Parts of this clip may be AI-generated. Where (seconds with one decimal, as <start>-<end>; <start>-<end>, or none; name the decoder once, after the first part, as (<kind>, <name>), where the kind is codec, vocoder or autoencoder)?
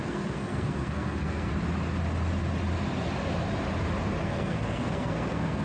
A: 0.0-1.5 (codec, SNAC); 4.2-5.6